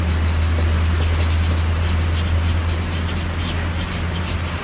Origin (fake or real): real